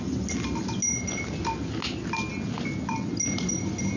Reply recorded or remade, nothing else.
recorded